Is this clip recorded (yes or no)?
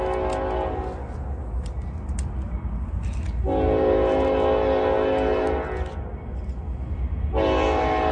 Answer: yes